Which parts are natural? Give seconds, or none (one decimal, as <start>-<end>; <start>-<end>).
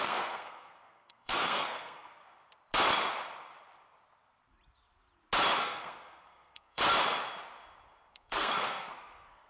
2.2-5.6; 6.8-8.1